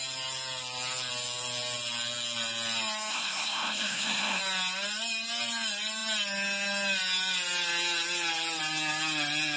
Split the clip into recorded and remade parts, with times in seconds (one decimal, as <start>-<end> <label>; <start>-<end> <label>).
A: 0.0-3.1 recorded; 3.1-4.4 remade; 4.4-9.6 recorded